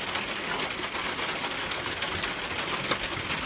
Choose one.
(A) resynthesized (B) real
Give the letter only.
B